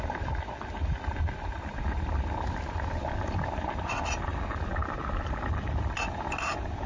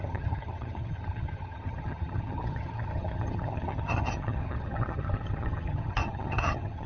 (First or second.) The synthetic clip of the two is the second